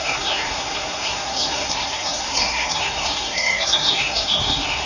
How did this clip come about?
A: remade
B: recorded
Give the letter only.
A